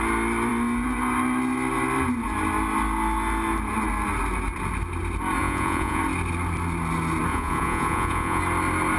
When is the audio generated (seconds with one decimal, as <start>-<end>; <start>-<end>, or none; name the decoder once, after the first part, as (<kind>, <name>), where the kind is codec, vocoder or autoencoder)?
5.4-6.0 (vocoder, Vocos); 7.3-8.4

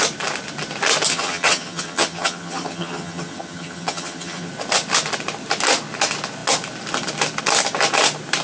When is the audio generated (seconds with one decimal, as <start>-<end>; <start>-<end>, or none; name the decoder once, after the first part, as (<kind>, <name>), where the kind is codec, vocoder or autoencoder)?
1.1-4.5 (vocoder, HiFi-GAN)

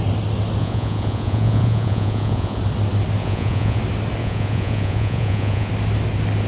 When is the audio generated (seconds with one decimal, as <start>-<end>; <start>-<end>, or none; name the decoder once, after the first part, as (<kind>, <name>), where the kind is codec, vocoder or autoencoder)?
0.6-2.6 (vocoder, Vocos); 3.2-3.8; 4.2-5.7

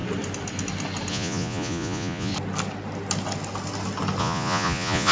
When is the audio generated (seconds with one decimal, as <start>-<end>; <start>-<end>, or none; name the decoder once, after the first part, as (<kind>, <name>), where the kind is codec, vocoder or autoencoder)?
1.1-2.3 (vocoder, Vocos); 4.2-5.1

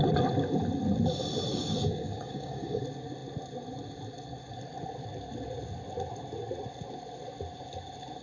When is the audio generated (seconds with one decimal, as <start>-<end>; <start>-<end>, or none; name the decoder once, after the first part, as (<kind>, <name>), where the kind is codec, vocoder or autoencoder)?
1.5-2.8 (codec, DAC)

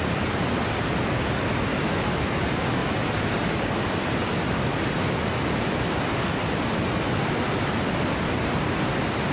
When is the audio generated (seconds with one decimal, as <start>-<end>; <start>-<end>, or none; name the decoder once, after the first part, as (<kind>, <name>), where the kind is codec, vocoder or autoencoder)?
2.8-7.3 (vocoder, BigVGAN v2)

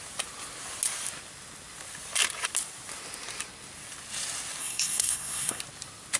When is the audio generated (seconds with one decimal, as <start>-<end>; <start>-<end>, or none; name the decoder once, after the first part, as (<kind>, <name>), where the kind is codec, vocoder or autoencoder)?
4.6-5.6 (codec, SNAC)